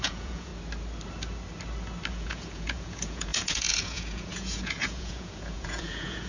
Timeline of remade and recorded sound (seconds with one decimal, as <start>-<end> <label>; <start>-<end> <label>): 0.0-0.5 remade; 0.5-2.1 recorded; 2.1-6.3 remade